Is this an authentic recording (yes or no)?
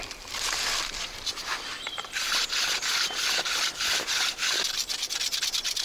no